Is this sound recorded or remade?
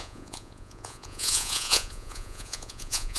remade